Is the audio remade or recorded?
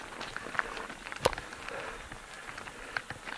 recorded